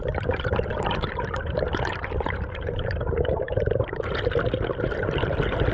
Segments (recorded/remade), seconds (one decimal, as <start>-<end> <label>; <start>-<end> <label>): 0.0-3.4 remade; 3.4-5.7 recorded